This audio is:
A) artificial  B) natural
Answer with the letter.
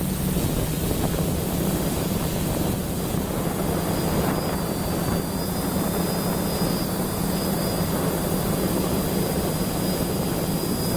B